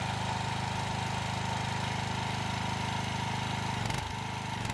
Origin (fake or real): real